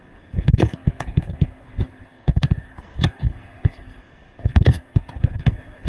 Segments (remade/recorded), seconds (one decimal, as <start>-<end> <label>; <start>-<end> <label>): 0.0-5.9 remade

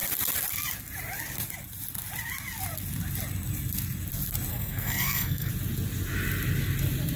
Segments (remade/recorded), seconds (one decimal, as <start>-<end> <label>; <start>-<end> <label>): 0.0-4.5 recorded; 4.5-5.5 remade; 5.5-7.2 recorded

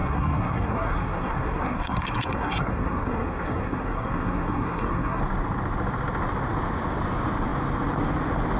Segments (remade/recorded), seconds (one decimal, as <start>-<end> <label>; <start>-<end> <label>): 0.0-5.2 remade; 5.2-8.6 recorded

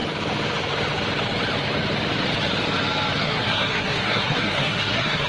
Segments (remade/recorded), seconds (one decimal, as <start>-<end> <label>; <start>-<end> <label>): 0.0-3.2 recorded; 3.2-5.3 remade

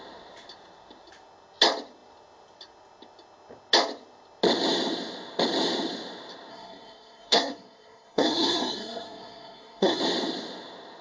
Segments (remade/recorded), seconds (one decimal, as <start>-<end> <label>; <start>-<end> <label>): 0.0-6.5 recorded; 6.5-10.0 remade; 10.0-11.0 recorded

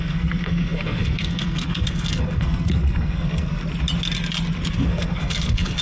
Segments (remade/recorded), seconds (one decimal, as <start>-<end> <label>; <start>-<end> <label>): 0.0-3.6 remade; 3.6-4.7 recorded; 4.7-5.8 remade

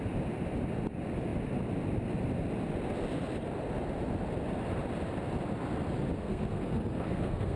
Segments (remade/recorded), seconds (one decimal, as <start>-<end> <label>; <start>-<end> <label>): 0.0-6.2 recorded; 6.2-7.6 remade

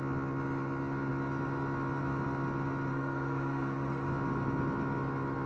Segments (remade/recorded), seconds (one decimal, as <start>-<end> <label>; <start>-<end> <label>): 0.0-2.9 recorded; 2.9-4.1 remade; 4.1-5.5 recorded